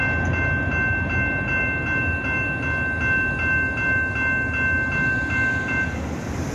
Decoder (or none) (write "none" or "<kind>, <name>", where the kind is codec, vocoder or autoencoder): none